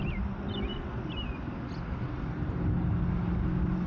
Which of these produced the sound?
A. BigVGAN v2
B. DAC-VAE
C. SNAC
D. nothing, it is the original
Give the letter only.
D